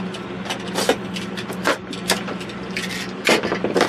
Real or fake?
real